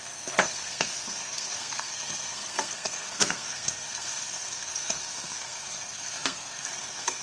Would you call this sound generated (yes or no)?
yes